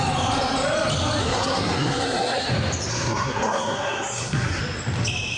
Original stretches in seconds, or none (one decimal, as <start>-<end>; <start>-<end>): 0.0-1.2; 2.5-2.9; 4.6-5.4